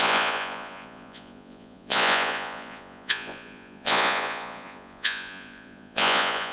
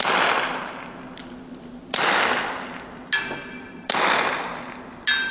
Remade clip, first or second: first